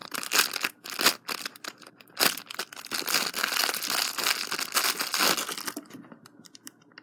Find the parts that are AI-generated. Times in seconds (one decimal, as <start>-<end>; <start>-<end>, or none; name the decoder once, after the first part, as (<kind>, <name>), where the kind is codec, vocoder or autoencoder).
none